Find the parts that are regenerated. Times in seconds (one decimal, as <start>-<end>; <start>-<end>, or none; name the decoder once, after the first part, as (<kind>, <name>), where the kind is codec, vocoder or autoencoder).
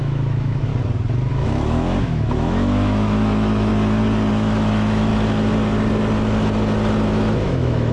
0.0-0.7 (autoencoder, DAC-VAE); 1.3-3.7; 4.3-5.1; 7.1-7.9